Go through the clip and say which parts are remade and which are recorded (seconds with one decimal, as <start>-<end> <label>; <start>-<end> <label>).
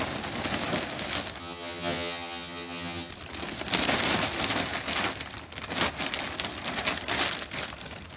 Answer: 0.0-1.4 recorded; 1.4-3.1 remade; 3.1-8.2 recorded